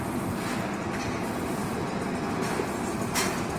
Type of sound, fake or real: real